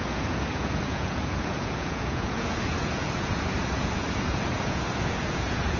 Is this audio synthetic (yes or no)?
yes